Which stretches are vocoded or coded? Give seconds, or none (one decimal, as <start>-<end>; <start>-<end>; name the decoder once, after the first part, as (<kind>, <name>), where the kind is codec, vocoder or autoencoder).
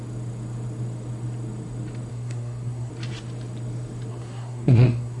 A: 2.1-2.9 (codec, SNAC); 4.1-5.2